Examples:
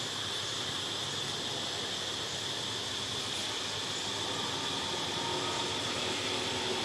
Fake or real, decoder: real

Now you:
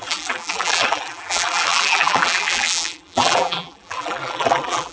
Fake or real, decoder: fake, vocoder, BigVGAN v2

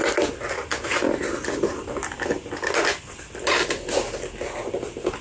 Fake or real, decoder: real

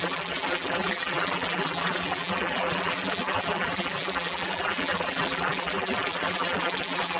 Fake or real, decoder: fake, vocoder, BigVGAN v2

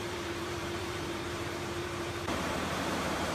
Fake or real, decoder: fake, vocoder, BigVGAN v2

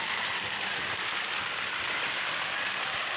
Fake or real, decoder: fake, vocoder, BigVGAN v2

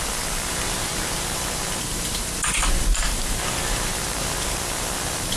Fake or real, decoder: fake, vocoder, BigVGAN v2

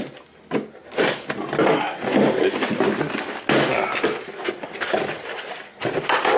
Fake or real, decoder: real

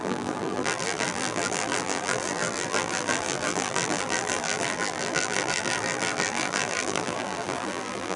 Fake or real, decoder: fake, vocoder, BigVGAN v2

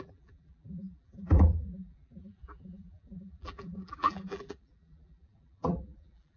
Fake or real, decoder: fake, vocoder, BigVGAN v2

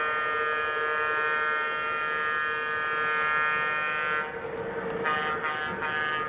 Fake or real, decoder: real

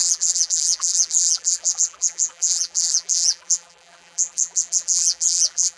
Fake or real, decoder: fake, vocoder, BigVGAN v2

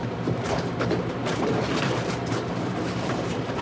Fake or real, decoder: fake, vocoder, BigVGAN v2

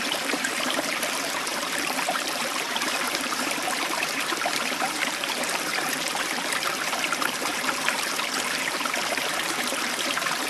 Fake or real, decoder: fake, vocoder, BigVGAN v2